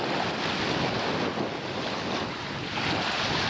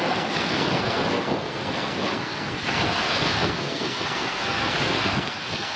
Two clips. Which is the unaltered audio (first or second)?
first